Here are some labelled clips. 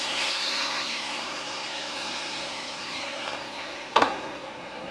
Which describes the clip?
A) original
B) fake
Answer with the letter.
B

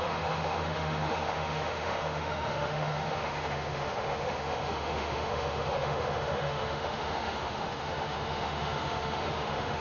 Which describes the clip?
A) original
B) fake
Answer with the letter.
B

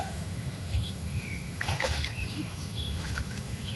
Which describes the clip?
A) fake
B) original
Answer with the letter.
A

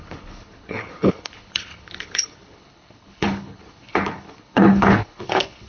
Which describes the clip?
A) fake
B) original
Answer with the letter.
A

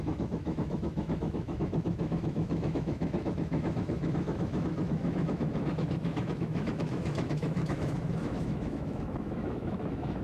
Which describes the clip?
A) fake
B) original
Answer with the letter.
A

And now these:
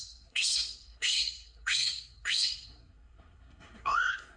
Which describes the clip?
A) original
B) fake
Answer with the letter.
B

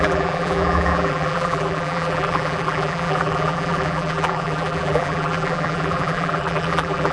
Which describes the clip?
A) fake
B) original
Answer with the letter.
A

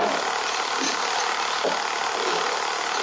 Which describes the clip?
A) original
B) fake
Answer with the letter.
A